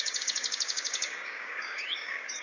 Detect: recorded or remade remade